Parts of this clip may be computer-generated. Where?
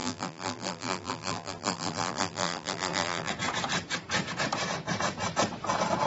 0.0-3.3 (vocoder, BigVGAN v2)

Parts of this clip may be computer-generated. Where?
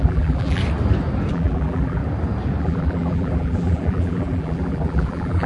0.0-0.6 (vocoder, BigVGAN v2); 1.3-2.0; 2.6-5.5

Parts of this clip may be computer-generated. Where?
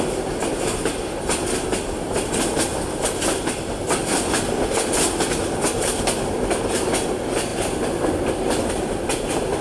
none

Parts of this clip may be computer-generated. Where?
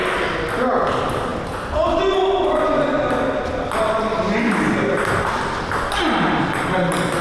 none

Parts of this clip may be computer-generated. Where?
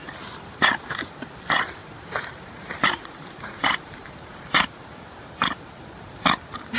0.0-1.0 (vocoder, BigVGAN v2); 1.8-5.3